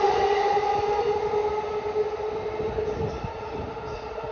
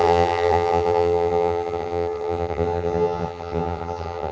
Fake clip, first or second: second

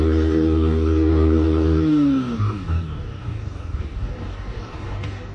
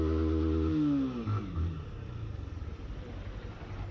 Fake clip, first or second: first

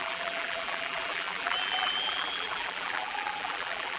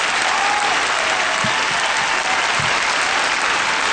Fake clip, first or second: first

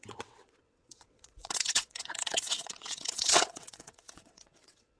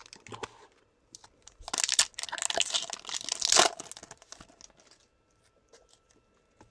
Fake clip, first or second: first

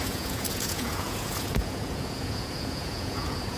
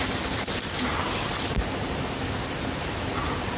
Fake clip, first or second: first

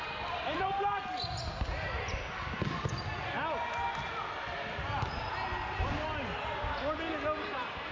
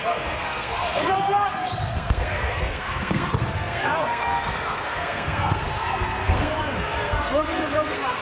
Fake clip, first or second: second